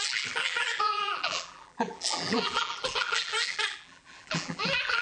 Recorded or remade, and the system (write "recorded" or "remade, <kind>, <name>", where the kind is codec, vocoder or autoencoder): remade, vocoder, BigVGAN v2